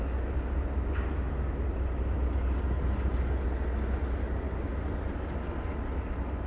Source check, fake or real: real